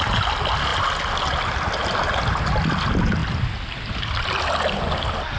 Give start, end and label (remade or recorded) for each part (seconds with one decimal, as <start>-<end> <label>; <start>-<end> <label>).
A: 0.0-5.4 recorded